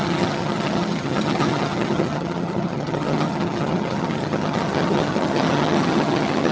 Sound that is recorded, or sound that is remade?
remade